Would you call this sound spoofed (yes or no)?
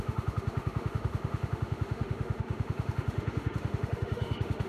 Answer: yes